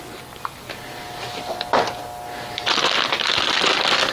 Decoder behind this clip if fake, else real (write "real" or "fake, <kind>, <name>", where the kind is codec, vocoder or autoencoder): real